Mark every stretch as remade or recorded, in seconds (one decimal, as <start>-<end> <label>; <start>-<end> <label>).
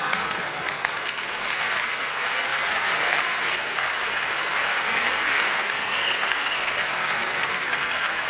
0.0-8.3 remade